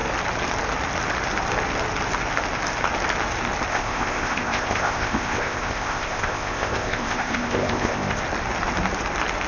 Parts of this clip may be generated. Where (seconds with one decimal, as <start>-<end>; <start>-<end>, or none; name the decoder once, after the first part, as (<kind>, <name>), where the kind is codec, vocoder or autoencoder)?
3.7-8.2 (codec, ZipCodec)